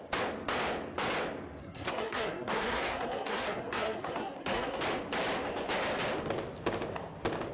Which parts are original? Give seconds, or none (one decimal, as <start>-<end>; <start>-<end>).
0.0-1.6; 4.8-7.5